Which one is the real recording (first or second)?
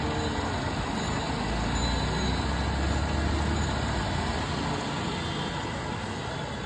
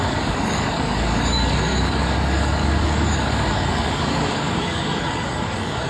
first